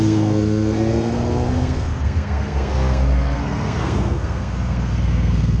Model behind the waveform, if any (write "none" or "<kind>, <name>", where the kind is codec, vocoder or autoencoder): codec, SNAC